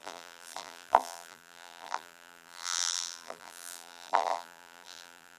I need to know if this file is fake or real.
fake